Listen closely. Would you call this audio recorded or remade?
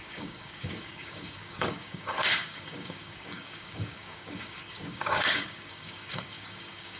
remade